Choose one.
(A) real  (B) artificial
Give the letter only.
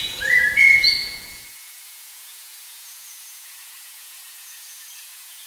B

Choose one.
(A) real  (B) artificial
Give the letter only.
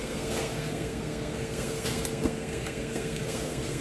B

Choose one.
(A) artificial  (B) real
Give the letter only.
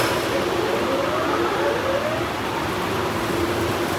B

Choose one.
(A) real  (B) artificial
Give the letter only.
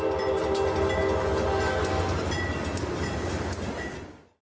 A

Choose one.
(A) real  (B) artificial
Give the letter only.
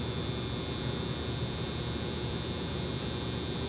A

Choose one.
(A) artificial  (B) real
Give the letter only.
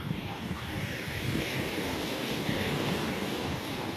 A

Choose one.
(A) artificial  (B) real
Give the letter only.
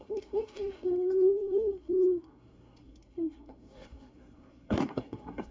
A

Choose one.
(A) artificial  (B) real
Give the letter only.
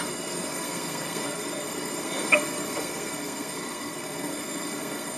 A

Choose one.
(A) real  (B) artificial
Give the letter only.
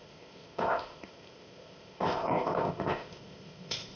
B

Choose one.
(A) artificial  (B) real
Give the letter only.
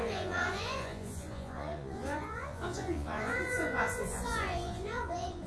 A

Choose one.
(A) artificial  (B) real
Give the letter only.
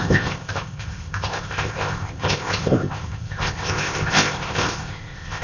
A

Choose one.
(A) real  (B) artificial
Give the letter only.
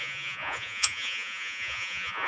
B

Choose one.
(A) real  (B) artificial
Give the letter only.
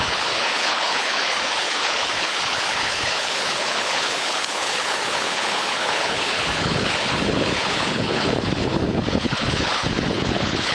B